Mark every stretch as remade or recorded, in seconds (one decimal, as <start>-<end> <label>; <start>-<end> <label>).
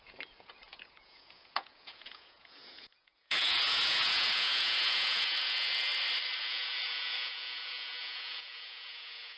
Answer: 0.0-5.9 remade; 5.9-6.4 recorded; 6.4-9.4 remade